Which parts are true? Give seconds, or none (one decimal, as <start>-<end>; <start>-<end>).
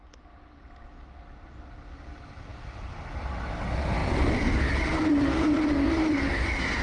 0.0-4.0; 6.2-6.8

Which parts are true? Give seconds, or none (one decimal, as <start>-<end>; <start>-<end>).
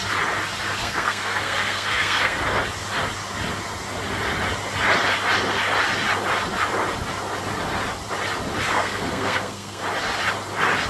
0.0-0.8; 2.4-8.7; 9.8-10.9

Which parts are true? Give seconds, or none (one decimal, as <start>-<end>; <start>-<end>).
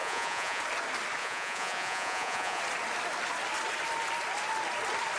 0.6-1.2; 2.6-5.2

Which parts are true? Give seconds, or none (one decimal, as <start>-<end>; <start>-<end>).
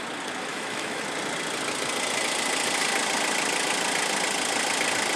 0.0-0.5; 1.0-5.2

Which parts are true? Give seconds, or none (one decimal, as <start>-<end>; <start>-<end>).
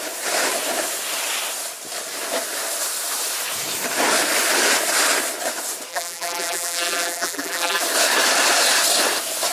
0.0-5.9; 7.8-9.5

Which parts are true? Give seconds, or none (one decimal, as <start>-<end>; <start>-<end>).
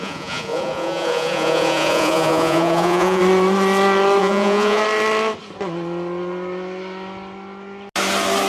3.2-4.2; 4.8-8.5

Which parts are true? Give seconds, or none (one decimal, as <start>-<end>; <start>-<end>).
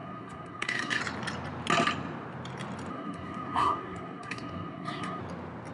1.0-2.9; 5.2-5.7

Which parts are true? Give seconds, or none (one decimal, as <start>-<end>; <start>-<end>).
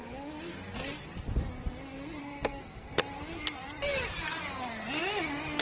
0.0-2.2; 3.0-5.6